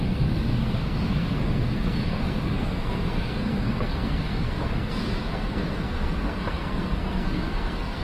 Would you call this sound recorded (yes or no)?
no